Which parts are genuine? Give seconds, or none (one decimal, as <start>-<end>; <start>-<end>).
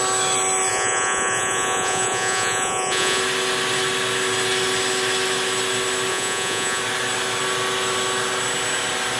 0.0-0.7; 3.2-6.1; 6.8-9.2